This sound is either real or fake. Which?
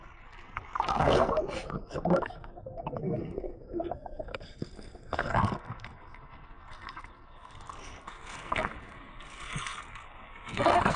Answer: fake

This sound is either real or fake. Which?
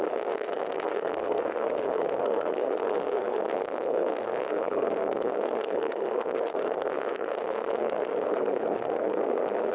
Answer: fake